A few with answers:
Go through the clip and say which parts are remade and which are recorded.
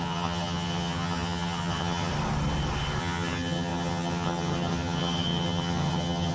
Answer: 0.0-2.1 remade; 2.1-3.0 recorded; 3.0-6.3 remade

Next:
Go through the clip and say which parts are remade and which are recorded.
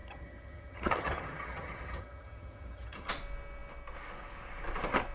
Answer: 0.0-3.1 remade; 3.1-5.1 recorded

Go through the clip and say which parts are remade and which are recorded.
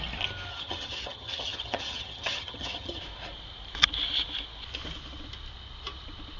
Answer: 0.0-0.5 recorded; 0.5-3.0 remade; 3.0-6.4 recorded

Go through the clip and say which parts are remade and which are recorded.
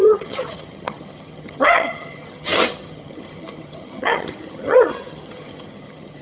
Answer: 0.0-6.2 remade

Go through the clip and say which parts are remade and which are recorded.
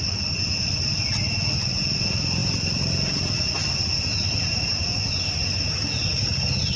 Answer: 0.0-6.8 recorded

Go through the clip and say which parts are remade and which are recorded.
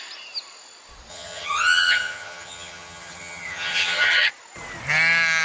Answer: 0.0-1.1 recorded; 1.1-4.3 remade; 4.3-5.4 recorded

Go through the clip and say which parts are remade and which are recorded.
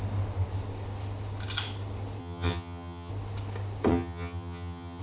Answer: 0.0-2.2 recorded; 2.2-3.1 remade; 3.1-3.9 recorded; 3.9-5.0 remade